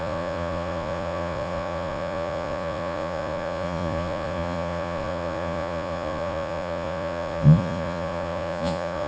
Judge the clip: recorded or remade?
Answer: remade